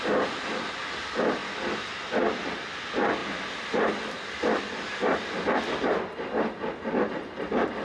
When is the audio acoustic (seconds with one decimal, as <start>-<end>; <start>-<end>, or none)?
0.0-3.2; 4.6-7.8